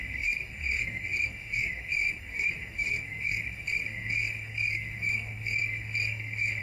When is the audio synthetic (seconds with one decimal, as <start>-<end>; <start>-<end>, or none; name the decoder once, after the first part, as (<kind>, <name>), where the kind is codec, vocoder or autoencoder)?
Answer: 0.0-6.6 (codec, SNAC)